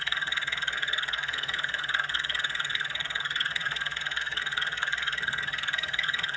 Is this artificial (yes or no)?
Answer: yes